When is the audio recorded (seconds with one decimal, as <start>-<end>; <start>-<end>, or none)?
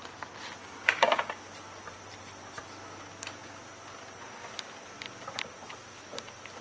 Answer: 0.0-0.6; 1.4-6.6